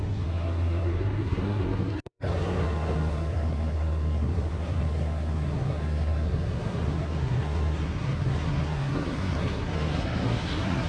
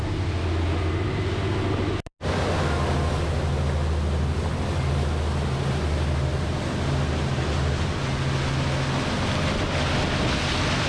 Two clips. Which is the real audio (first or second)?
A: second